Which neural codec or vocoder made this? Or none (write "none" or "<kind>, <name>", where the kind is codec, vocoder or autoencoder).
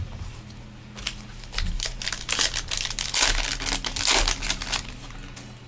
none